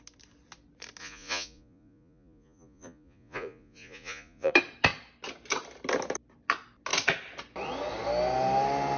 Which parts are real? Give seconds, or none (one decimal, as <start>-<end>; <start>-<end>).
0.0-1.0; 4.5-9.0